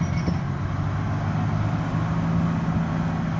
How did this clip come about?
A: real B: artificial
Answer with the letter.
A